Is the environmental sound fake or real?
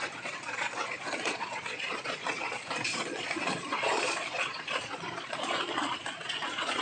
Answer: fake